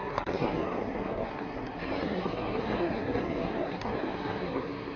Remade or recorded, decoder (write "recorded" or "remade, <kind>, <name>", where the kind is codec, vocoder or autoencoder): remade, codec, SNAC